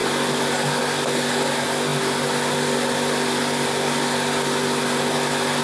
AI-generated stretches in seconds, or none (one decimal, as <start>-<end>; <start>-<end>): none